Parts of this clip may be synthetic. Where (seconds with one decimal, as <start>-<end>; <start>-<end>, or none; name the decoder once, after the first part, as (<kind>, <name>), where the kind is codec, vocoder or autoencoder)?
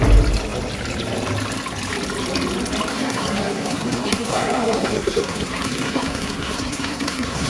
2.9-7.5 (codec, SNAC)